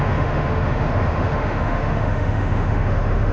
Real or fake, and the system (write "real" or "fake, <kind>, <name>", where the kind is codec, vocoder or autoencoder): fake, autoencoder, DAC-VAE